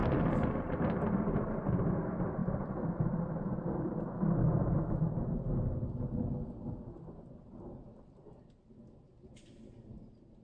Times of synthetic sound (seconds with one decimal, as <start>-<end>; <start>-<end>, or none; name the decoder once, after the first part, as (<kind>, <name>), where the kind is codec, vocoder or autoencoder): 2.4-5.2 (vocoder, BigVGAN v2)